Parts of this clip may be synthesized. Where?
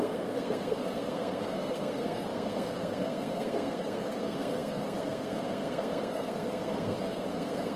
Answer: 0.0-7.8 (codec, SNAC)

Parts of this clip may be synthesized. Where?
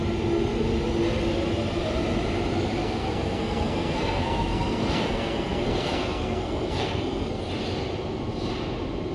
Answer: 2.8-7.4 (codec, SNAC)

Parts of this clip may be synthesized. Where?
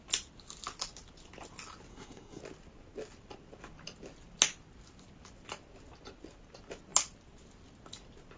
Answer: 1.9-2.4 (codec, SNAC)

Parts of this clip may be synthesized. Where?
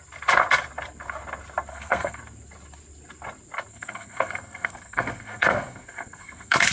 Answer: 1.7-2.2 (codec, SNAC); 3.7-6.7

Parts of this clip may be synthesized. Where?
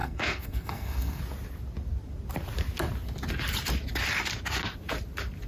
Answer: 0.0-1.2 (codec, SNAC)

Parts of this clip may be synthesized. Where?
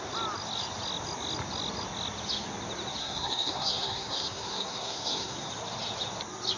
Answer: 3.0-5.5 (codec, SNAC)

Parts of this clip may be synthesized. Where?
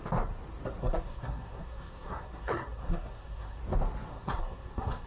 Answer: 0.8-3.6 (codec, SNAC); 4.1-5.1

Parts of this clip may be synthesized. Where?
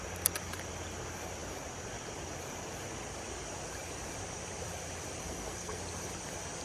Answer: 5.2-5.8 (codec, SNAC)